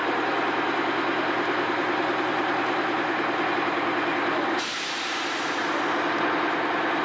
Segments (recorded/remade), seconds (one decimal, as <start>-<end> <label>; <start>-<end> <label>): 0.0-7.0 recorded